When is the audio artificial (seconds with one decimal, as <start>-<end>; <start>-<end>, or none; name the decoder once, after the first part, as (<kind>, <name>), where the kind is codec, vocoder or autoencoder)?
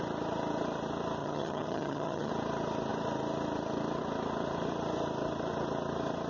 1.2-2.3 (vocoder, HiFi-GAN)